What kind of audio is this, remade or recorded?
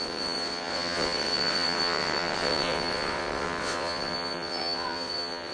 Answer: remade